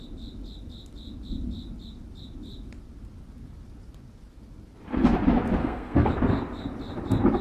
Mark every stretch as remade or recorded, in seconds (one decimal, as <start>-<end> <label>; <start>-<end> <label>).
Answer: 0.0-5.6 recorded; 5.6-6.1 remade; 6.1-7.4 recorded